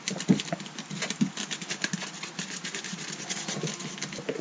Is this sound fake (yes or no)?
no